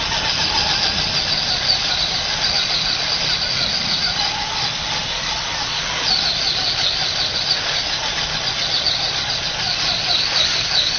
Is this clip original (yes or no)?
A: yes